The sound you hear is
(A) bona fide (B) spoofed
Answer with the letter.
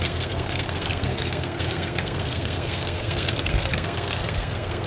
B